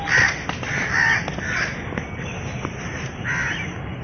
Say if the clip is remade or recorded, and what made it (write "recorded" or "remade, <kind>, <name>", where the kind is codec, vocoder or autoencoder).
recorded